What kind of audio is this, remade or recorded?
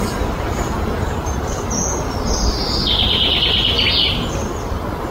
recorded